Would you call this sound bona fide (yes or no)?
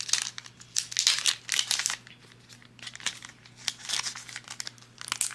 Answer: yes